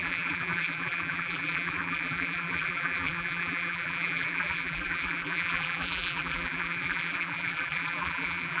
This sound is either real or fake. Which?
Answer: fake